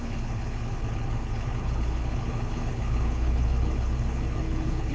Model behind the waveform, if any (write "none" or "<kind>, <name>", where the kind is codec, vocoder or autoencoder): codec, HILCodec